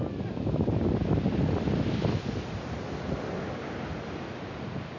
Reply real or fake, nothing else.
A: real